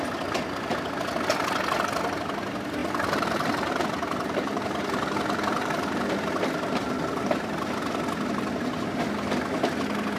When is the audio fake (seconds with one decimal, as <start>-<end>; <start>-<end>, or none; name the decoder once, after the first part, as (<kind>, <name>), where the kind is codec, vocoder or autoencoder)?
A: 2.8-7.7 (vocoder, BigVGAN v2)